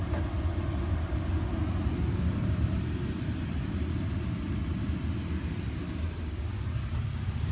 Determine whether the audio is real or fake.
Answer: real